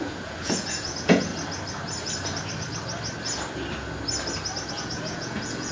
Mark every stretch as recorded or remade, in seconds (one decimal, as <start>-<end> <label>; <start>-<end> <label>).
0.0-1.3 remade; 1.3-4.7 recorded; 4.7-5.7 remade